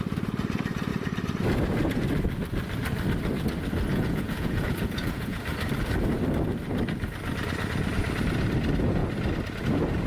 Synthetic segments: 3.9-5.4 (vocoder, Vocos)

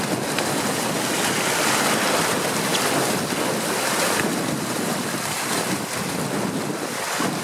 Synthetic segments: none

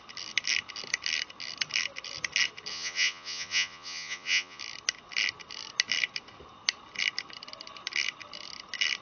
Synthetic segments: 2.7-4.6 (vocoder, Vocos)

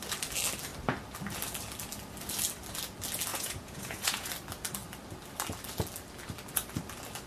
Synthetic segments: 3.3-4.3 (vocoder, Vocos)